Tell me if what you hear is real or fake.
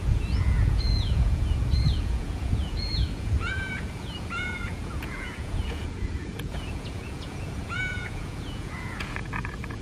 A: fake